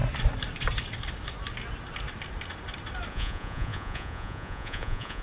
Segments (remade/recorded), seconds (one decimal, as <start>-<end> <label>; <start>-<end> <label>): 0.0-3.1 recorded; 3.1-5.2 remade